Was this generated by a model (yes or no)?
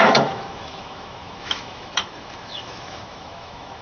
yes